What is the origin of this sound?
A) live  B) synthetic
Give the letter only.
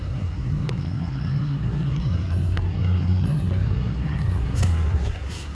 B